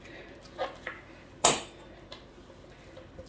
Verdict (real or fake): real